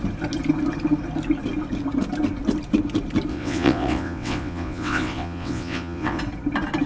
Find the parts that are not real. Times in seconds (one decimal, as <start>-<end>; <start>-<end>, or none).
3.3-6.2